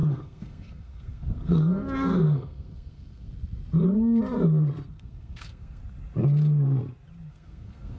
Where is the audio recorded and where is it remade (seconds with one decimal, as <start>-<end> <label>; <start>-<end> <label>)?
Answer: 0.0-3.3 remade; 3.3-4.9 recorded; 4.9-5.8 remade; 5.8-7.3 recorded; 7.3-8.0 remade